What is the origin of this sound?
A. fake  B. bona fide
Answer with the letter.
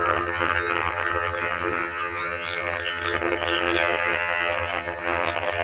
A